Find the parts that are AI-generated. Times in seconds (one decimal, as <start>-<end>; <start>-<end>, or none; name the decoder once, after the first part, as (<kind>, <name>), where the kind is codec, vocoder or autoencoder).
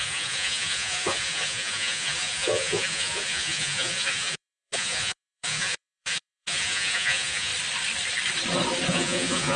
0.0-7.5 (vocoder, Vocos); 8.9-9.6